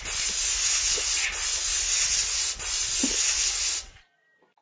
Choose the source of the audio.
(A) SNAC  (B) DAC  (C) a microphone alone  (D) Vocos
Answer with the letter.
C